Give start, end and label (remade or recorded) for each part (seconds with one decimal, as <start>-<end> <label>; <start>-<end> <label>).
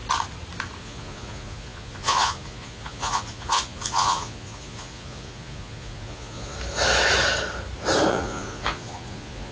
0.0-0.8 recorded; 0.8-6.5 remade; 6.5-8.1 recorded; 8.1-9.5 remade